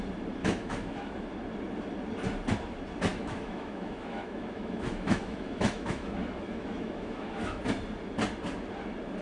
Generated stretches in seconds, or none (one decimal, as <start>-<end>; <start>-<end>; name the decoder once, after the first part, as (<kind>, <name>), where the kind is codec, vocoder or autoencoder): 0.4-1.2 (autoencoder, DAC-VAE); 3.1-7.6